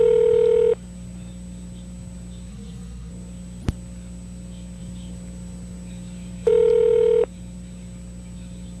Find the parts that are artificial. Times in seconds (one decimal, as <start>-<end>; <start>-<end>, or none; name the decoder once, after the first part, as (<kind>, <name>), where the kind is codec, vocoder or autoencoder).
2.5-3.1 (codec, SNAC)